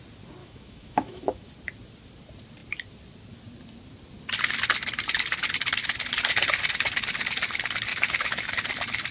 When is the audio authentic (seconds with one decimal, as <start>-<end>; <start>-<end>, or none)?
0.0-0.4; 1.5-7.9; 8.5-9.1